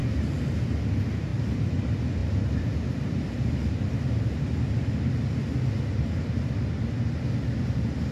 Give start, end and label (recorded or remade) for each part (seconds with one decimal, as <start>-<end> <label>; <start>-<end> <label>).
0.0-0.5 remade; 0.5-1.3 recorded; 1.3-1.8 remade; 1.8-2.2 recorded; 2.2-4.6 remade; 4.6-8.1 recorded